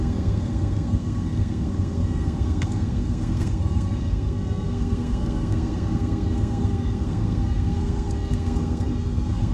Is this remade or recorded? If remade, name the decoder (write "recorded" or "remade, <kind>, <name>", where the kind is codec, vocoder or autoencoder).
remade, codec, SNAC